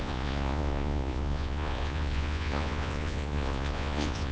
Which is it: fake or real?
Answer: fake